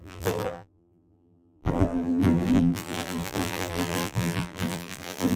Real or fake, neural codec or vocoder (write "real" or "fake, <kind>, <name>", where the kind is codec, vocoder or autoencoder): fake, vocoder, BigVGAN v2